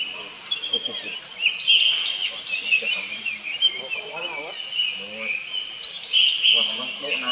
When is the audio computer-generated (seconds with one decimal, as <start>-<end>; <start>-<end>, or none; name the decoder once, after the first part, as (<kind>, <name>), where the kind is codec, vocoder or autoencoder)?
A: none